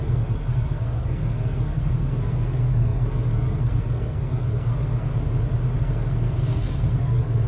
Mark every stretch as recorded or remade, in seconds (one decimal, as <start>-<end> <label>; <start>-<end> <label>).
0.0-5.1 remade; 5.1-5.8 recorded; 5.8-7.5 remade